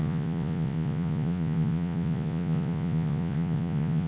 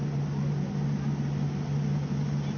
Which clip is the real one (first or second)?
second